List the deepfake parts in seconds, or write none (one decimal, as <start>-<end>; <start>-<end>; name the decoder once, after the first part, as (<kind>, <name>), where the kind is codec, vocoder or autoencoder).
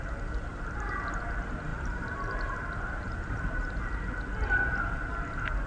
0.5-1.2 (vocoder, BigVGAN v2); 1.7-3.8